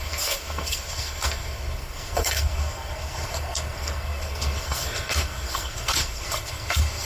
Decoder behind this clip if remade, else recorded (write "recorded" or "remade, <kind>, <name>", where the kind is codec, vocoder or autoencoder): remade, codec, SNAC